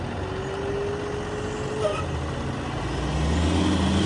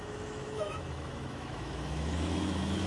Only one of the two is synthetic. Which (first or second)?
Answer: second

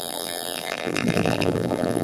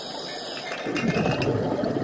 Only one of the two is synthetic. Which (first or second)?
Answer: first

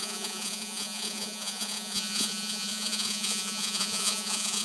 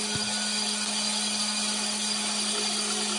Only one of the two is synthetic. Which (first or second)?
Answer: first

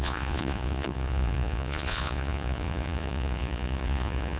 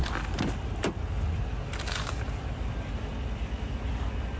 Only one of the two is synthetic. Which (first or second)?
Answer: first